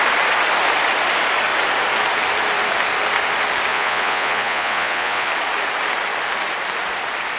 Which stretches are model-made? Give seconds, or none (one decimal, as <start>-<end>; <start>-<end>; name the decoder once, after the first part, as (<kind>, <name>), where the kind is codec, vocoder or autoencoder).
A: 3.7-5.3 (vocoder, Vocos)